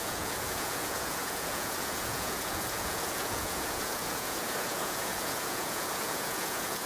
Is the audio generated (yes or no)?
yes